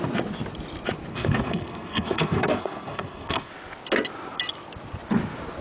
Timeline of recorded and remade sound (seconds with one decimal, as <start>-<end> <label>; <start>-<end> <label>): 0.0-1.1 recorded; 1.1-3.5 remade; 3.5-5.6 recorded